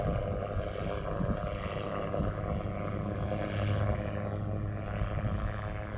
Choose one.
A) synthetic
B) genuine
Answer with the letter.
B